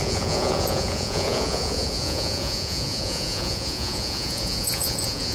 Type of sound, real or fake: fake